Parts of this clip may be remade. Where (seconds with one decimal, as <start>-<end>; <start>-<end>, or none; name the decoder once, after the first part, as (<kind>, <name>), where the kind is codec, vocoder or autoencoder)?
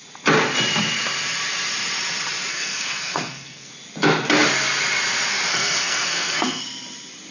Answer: 2.5-3.7 (codec, SNAC); 5.5-6.6